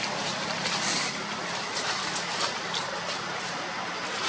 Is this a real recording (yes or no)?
no